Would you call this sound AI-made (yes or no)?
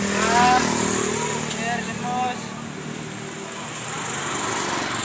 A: no